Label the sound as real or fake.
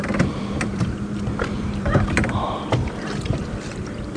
fake